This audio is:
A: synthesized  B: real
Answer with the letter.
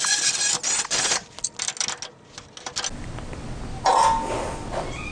B